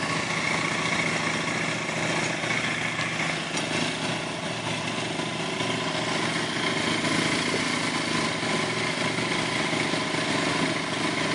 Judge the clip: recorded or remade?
recorded